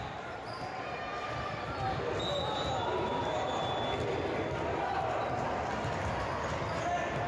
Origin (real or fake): real